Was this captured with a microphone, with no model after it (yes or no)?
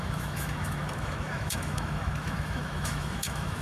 no